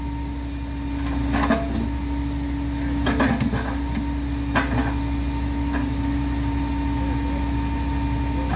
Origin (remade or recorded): recorded